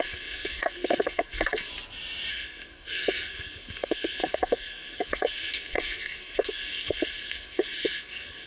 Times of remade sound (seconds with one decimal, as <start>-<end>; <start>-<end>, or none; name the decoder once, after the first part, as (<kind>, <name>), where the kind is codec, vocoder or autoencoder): 0.0-1.7 (codec, SNAC); 2.3-8.5